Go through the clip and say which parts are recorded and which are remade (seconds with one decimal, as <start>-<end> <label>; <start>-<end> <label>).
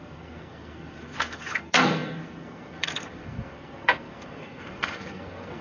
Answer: 0.0-5.6 remade